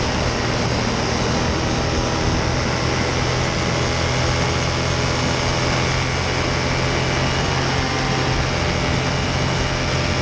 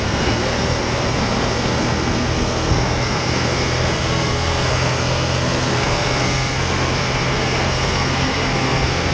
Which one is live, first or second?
first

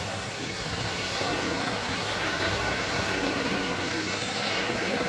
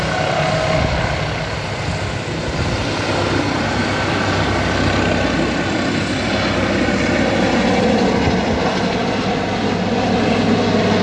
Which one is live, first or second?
second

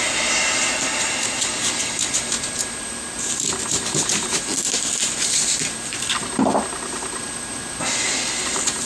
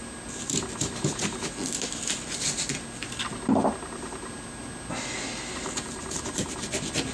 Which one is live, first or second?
second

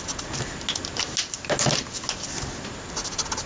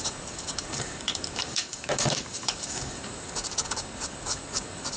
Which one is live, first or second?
first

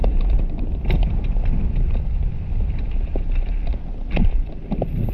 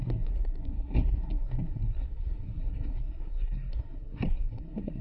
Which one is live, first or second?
first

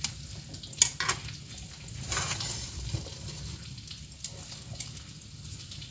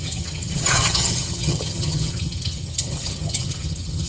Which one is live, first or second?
first